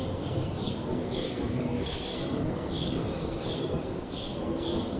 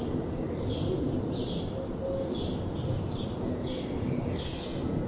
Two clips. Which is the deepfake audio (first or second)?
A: first